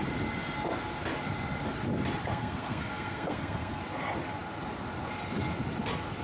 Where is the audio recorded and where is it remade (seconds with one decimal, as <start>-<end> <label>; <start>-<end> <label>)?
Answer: 0.0-2.3 recorded; 2.3-3.8 remade; 3.8-6.2 recorded